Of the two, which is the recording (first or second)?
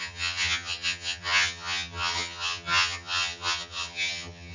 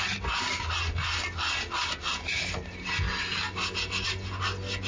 second